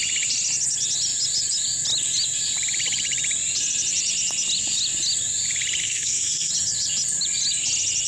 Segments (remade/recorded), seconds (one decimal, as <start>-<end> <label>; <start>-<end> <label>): 0.0-5.8 recorded; 5.8-6.5 remade; 6.5-8.1 recorded